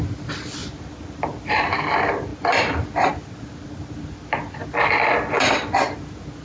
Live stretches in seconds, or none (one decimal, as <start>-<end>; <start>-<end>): 0.0-6.4